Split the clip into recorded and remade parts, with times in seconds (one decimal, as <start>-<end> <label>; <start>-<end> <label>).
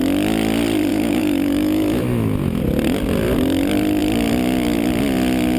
0.0-0.9 recorded; 0.9-2.6 remade; 2.6-5.6 recorded